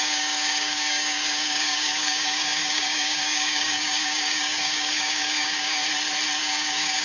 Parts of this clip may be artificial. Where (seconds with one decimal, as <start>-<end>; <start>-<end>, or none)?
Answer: 0.0-5.8; 6.4-7.0